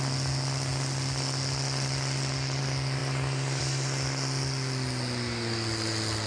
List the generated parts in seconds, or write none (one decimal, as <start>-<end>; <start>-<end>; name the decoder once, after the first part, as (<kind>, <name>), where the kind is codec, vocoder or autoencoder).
none